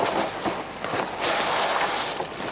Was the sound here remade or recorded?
recorded